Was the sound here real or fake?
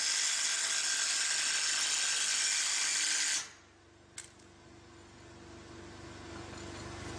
real